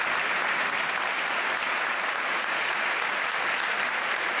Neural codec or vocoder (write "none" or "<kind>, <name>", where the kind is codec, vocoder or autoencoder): none